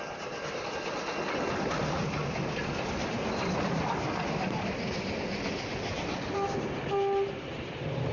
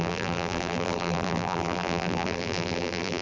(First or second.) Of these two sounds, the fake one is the second